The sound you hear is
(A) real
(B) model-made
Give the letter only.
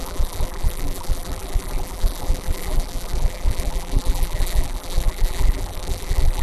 B